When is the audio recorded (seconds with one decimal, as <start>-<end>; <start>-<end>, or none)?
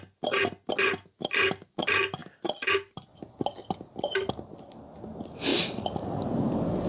0.0-5.5; 6.2-6.9